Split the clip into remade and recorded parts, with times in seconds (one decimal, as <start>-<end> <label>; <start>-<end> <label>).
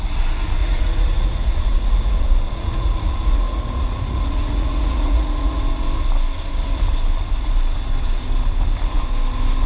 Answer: 0.0-0.6 recorded; 0.6-5.6 remade; 5.6-9.7 recorded